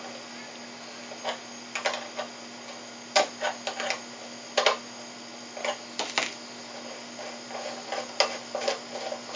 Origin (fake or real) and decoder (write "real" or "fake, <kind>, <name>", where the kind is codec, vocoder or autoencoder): real